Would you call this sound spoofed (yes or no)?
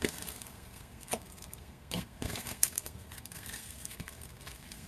yes